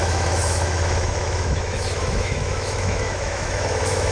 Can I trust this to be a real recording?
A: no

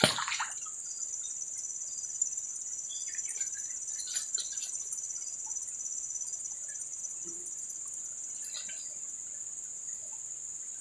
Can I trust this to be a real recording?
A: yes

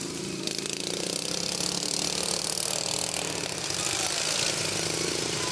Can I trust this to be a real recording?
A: no